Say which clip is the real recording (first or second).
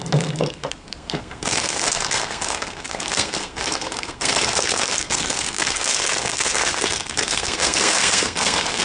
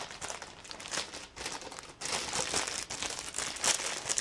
second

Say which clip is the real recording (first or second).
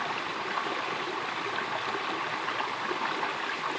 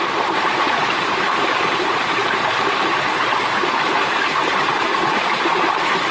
first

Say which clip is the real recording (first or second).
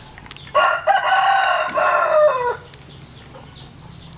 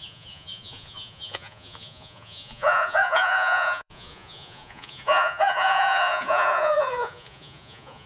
first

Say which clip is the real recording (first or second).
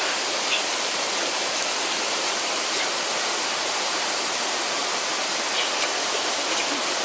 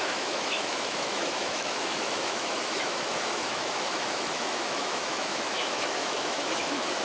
first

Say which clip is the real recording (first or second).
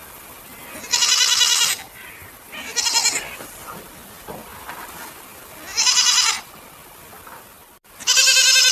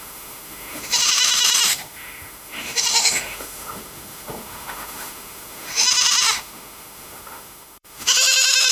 first